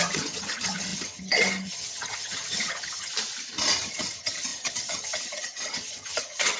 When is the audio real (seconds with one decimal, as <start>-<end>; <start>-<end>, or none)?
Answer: 3.1-3.9